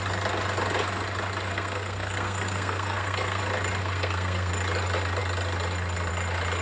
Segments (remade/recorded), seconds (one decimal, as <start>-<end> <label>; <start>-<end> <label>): 0.0-1.5 recorded; 1.5-3.4 remade; 3.4-3.8 recorded; 3.8-4.5 remade; 4.5-6.6 recorded